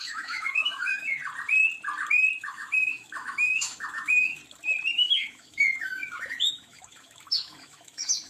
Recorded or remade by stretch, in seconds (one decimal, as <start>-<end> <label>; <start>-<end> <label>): 0.0-1.2 remade; 1.2-2.4 recorded; 2.4-4.4 remade; 4.4-4.9 recorded; 4.9-8.3 remade